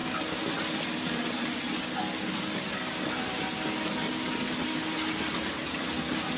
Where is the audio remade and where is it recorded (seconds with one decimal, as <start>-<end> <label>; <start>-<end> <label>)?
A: 0.0-6.4 recorded